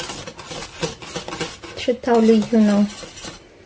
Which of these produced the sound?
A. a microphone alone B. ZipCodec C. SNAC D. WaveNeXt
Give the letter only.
A